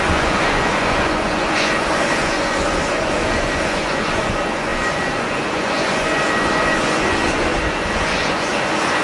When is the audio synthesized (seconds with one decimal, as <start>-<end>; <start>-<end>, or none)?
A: 0.0-9.0